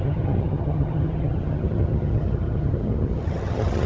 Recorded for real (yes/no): no